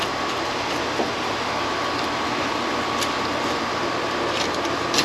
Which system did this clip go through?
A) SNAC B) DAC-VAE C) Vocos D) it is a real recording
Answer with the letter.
D